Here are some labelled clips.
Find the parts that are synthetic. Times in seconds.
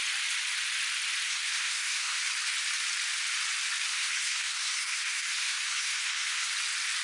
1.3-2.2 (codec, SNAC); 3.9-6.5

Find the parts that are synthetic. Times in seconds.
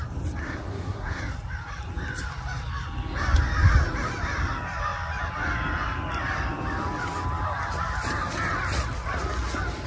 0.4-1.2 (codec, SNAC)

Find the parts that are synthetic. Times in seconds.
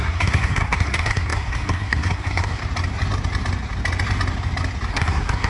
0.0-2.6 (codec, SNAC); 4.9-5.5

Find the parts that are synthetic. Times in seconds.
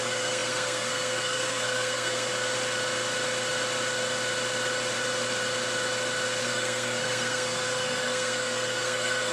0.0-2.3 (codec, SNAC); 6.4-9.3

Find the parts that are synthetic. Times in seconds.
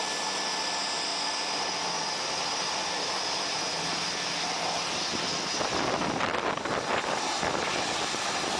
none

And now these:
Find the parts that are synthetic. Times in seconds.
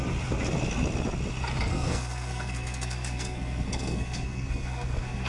1.7-5.3 (codec, SNAC)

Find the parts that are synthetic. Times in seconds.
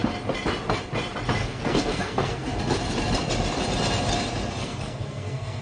1.4-2.6 (codec, SNAC); 4.6-5.6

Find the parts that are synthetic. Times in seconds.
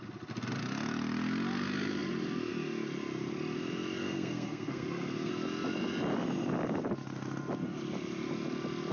4.0-5.3 (codec, SNAC)